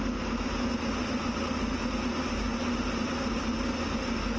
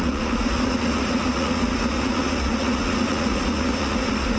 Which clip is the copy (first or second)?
second